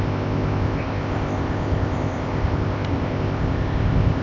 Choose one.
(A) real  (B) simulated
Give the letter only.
B